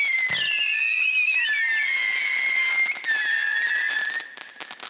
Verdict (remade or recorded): recorded